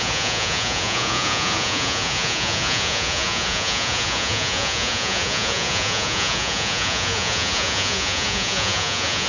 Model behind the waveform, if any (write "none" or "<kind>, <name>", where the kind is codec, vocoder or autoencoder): vocoder, Vocos